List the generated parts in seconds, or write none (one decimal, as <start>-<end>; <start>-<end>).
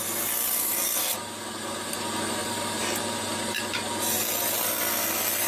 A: none